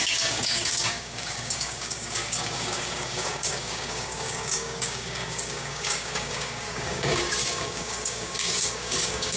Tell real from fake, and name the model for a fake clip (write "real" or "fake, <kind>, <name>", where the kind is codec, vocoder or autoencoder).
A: fake, codec, DAC